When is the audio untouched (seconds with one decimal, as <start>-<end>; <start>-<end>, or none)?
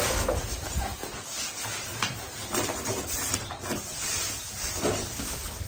0.0-5.7